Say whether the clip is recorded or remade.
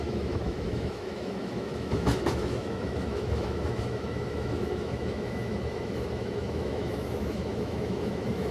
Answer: remade